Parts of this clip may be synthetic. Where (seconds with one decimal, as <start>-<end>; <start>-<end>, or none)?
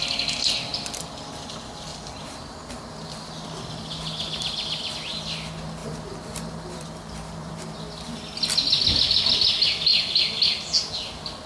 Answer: 0.7-1.5; 1.9-3.3; 5.8-7.5; 9.9-10.6